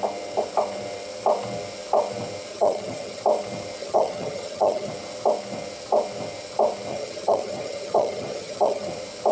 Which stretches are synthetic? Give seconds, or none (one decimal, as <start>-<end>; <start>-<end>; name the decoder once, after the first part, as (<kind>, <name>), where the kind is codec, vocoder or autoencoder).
2.5-3.2 (vocoder, HiFi-GAN); 3.8-4.9; 6.9-8.9